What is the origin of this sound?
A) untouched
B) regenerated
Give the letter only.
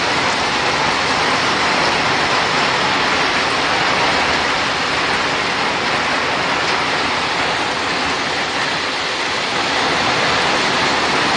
A